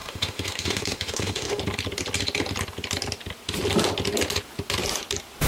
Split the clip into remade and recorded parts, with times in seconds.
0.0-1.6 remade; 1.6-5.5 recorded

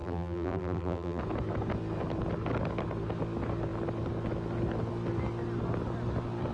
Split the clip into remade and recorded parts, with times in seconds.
0.0-1.2 remade; 1.2-6.5 recorded

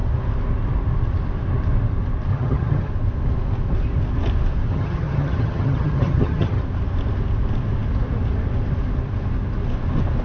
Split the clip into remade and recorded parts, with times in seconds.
0.0-2.3 recorded; 2.3-2.9 remade; 2.9-4.7 recorded; 4.7-6.6 remade; 6.6-10.2 recorded

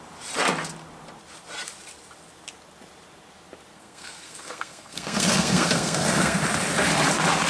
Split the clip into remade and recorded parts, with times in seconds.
0.0-3.7 recorded; 3.7-6.4 remade; 6.4-7.5 recorded

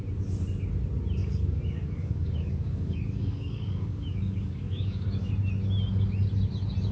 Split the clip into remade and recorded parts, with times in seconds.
0.0-1.2 recorded; 1.2-5.3 remade; 5.3-6.9 recorded

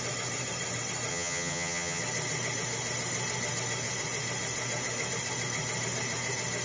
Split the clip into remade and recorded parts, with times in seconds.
0.0-1.1 recorded; 1.1-2.0 remade; 2.0-6.6 recorded